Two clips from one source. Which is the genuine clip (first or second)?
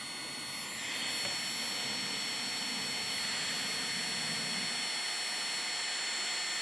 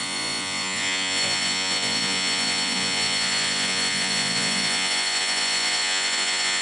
first